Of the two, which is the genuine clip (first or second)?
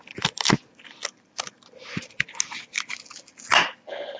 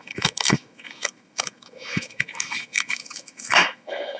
first